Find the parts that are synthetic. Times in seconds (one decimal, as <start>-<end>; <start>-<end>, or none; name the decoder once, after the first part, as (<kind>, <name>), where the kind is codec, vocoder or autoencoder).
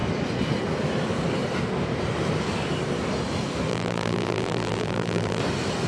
3.7-5.4 (vocoder, BigVGAN v2)